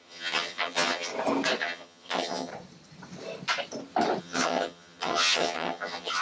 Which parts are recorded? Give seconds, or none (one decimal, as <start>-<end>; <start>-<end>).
1.1-1.6; 2.5-4.2